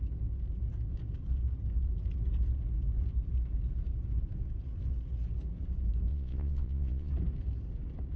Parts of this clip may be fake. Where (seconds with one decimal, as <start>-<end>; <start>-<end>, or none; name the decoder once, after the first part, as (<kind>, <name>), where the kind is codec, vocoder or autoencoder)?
6.1-7.1 (vocoder, Vocos)